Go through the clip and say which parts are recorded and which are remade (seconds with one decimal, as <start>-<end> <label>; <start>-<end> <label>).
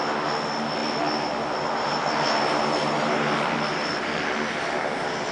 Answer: 0.0-5.3 recorded